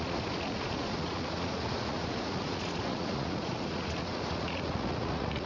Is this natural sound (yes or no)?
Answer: no